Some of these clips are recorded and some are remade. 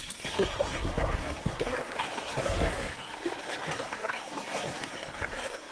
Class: remade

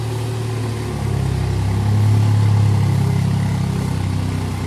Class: recorded